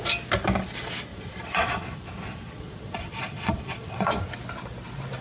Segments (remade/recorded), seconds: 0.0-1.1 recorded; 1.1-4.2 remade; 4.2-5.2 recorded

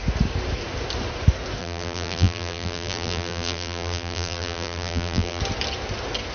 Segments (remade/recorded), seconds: 0.0-1.6 recorded; 1.6-5.4 remade; 5.4-6.3 recorded

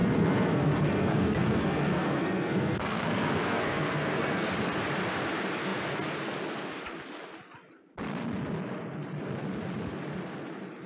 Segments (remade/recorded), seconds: 0.0-4.5 remade; 4.5-10.9 recorded

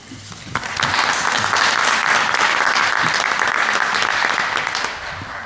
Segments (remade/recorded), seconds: 0.0-5.5 recorded

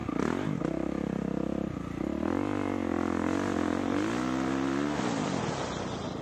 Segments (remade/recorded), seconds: 0.0-6.2 recorded